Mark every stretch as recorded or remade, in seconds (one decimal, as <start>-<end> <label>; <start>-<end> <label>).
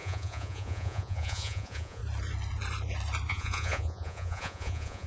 0.0-2.0 remade; 2.0-3.3 recorded; 3.3-5.1 remade